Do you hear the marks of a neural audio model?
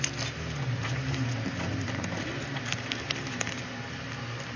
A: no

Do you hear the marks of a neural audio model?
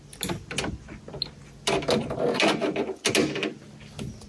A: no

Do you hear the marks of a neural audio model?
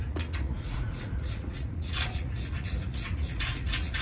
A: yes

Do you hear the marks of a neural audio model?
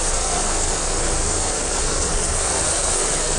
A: yes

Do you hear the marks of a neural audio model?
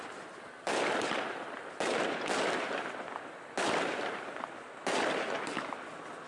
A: no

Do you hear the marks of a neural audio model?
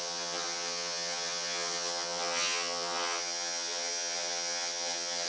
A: yes